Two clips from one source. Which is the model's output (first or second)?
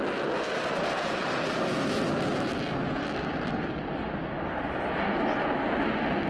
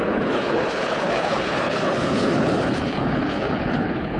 second